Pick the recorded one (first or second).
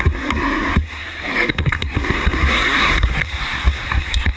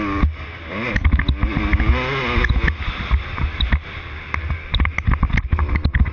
second